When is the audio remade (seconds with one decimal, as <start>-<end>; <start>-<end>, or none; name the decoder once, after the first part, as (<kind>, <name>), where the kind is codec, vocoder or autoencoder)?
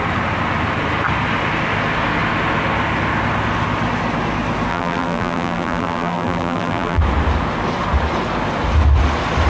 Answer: 4.7-7.0 (vocoder, BigVGAN v2)